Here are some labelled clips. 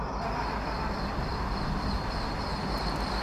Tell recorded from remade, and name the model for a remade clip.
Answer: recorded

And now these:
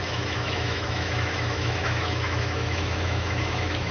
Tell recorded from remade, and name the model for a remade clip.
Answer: remade, autoencoder, DAC-VAE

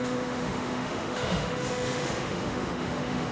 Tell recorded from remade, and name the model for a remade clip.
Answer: remade, autoencoder, DAC-VAE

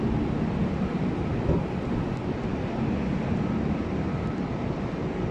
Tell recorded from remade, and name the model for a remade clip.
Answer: recorded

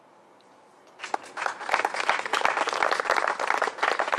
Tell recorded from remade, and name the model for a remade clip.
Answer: recorded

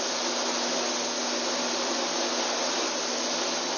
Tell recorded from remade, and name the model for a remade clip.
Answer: recorded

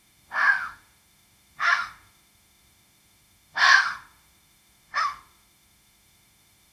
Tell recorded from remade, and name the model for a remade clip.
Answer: remade, autoencoder, DAC-VAE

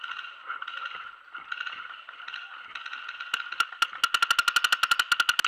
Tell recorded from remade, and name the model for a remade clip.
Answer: recorded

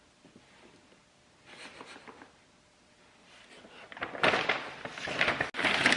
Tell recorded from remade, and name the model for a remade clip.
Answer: recorded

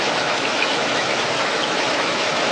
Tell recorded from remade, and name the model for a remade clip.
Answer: remade, autoencoder, DAC-VAE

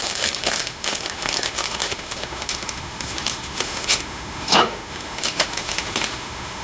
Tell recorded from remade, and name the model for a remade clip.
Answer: remade, autoencoder, DAC-VAE